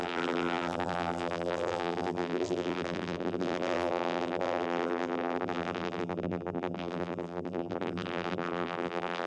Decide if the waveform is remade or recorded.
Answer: remade